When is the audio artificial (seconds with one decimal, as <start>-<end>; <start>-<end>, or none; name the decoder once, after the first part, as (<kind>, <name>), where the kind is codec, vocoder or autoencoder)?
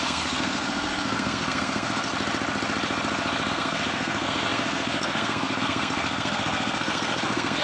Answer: 0.0-2.1 (codec, SNAC); 3.5-7.6